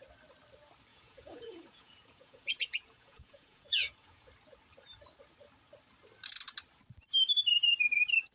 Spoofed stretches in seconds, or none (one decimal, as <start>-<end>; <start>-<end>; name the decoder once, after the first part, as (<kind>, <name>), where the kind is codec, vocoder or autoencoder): 0.9-4.3 (vocoder, Vocos)